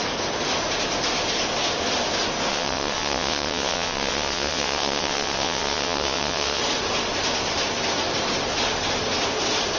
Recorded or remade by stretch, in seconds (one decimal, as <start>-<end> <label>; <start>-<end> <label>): 0.0-2.5 recorded; 2.5-6.6 remade; 6.6-9.8 recorded